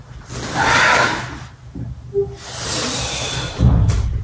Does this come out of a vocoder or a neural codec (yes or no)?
no